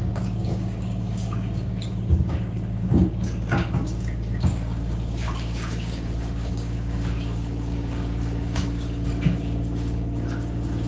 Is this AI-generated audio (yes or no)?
yes